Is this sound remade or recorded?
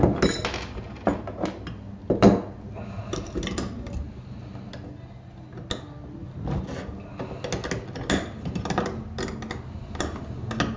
recorded